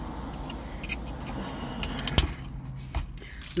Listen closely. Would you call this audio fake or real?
real